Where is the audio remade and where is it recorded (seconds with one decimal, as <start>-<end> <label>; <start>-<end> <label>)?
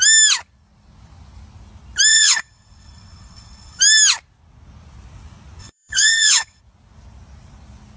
0.0-2.1 recorded; 2.1-3.8 remade; 3.8-5.6 recorded; 5.6-6.6 remade; 6.6-8.0 recorded